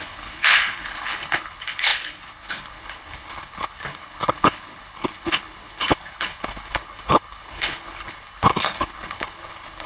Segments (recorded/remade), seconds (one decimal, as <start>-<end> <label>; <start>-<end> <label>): 0.0-9.9 remade

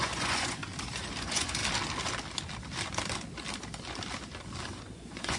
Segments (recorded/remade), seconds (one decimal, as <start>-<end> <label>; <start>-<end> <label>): 0.0-0.6 remade; 0.6-1.2 recorded; 1.2-1.6 remade; 1.6-4.8 recorded; 4.8-5.4 remade